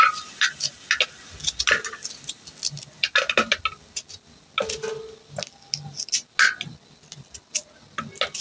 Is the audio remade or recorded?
recorded